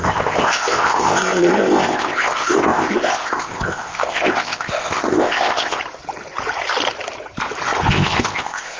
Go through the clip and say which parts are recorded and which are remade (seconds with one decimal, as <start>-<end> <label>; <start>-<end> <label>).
0.0-5.8 remade; 5.8-7.9 recorded; 7.9-8.8 remade